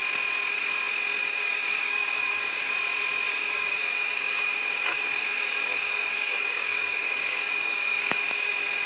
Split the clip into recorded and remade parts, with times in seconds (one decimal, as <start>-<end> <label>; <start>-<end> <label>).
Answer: 0.0-1.2 recorded; 1.2-2.7 remade; 2.7-3.3 recorded; 3.3-8.5 remade; 8.5-8.9 recorded